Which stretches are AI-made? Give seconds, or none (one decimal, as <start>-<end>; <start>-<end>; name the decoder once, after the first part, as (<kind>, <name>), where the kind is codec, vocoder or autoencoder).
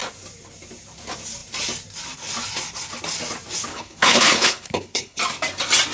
3.7-5.2 (codec, HILCodec)